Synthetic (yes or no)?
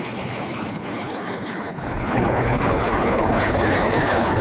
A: yes